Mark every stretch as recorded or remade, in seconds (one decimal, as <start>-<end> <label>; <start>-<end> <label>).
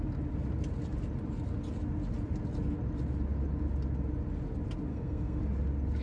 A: 0.0-4.9 recorded; 4.9-5.4 remade; 5.4-6.0 recorded